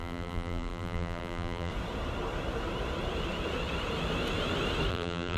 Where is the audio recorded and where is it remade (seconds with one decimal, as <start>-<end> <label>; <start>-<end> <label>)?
0.0-1.7 remade; 1.7-4.9 recorded; 4.9-5.4 remade